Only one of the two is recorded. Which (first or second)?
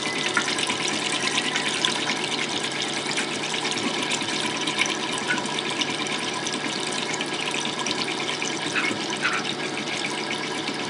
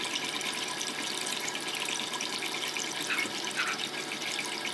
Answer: second